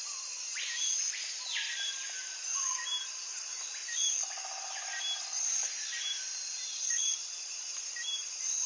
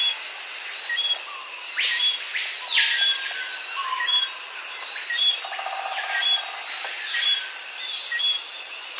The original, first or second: second